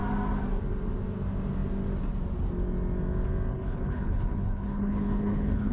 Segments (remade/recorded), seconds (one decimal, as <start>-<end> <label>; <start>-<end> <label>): 0.0-3.5 recorded; 3.5-5.7 remade